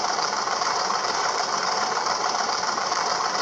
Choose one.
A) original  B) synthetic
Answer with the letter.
B